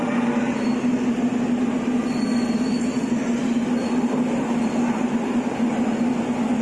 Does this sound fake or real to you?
real